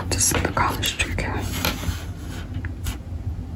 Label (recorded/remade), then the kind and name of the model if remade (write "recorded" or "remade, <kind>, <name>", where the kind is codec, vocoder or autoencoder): recorded